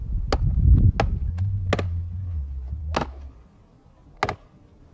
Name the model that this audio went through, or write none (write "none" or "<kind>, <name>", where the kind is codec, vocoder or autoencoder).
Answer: none